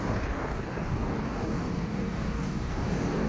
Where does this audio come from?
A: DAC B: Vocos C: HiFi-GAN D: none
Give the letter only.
A